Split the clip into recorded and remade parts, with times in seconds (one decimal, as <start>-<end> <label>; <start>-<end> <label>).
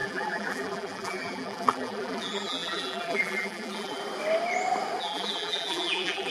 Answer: 0.0-4.0 remade; 4.0-5.0 recorded; 5.0-6.3 remade